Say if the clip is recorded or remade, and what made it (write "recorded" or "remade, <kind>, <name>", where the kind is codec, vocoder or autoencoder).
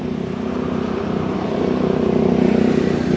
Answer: recorded